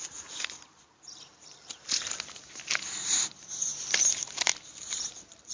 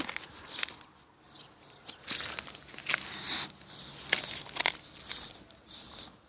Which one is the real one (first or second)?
second